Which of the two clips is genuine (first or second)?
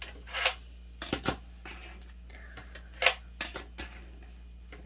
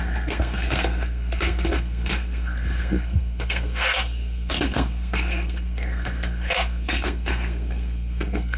first